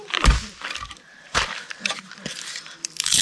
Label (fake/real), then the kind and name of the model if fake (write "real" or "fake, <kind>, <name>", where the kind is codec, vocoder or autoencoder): fake, vocoder, BigVGAN v2